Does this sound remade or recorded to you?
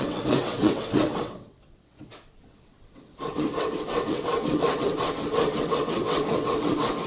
remade